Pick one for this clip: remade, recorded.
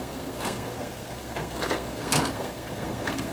remade